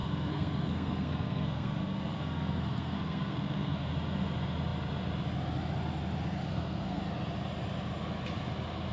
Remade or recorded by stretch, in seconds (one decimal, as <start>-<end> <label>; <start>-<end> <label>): 0.0-3.9 remade; 3.9-6.5 recorded; 6.5-7.0 remade; 7.0-8.9 recorded